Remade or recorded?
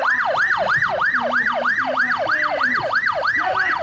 recorded